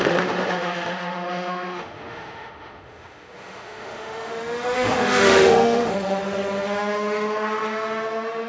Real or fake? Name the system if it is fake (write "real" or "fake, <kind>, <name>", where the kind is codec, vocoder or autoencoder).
fake, autoencoder, DAC-VAE